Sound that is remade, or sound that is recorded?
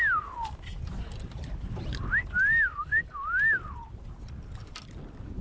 recorded